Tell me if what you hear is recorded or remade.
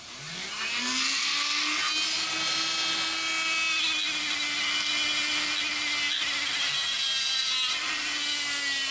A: recorded